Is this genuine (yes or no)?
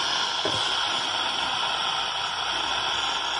yes